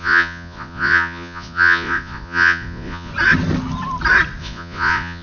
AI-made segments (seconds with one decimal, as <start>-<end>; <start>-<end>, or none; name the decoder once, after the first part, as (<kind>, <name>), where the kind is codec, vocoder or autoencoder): 0.0-3.1 (vocoder, Vocos); 4.4-5.2